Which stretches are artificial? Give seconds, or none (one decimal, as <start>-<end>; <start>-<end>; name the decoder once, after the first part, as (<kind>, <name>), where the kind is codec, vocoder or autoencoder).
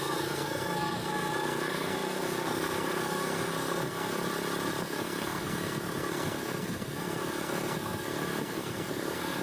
0.0-4.2 (codec, SNAC); 4.8-9.4